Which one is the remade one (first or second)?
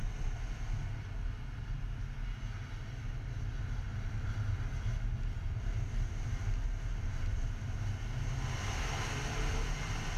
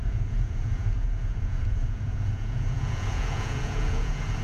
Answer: second